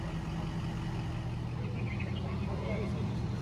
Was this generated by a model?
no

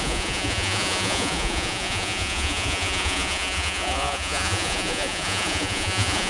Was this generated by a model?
yes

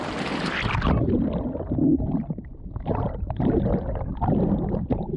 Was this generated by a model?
no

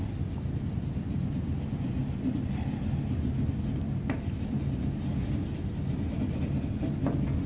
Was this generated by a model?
no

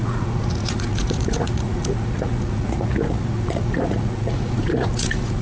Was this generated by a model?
yes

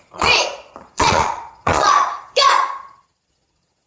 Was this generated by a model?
yes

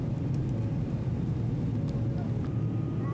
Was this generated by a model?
no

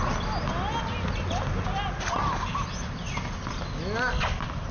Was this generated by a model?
no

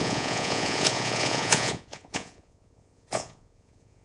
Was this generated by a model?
yes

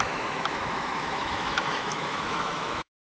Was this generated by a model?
yes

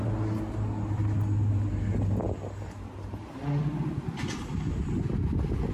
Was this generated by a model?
no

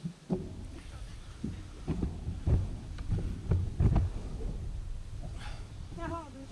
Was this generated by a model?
no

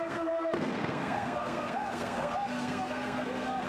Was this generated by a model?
yes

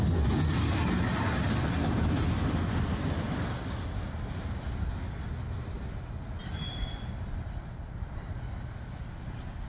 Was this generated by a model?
no